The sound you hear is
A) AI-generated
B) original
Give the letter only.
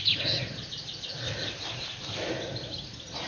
B